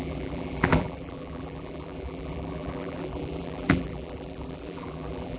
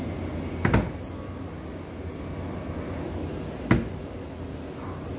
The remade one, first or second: first